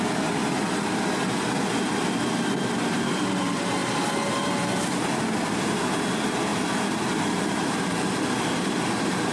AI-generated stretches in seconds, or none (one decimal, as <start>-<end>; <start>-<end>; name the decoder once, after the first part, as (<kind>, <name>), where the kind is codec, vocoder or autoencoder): 0.0-0.4 (vocoder, BigVGAN v2); 2.6-3.8; 4.3-9.3